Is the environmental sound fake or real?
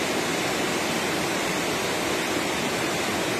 fake